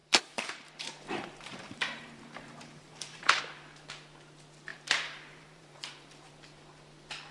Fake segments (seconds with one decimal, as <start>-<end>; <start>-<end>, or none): 0.0-3.4; 4.7-6.3